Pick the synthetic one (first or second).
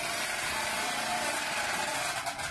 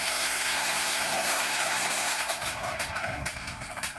second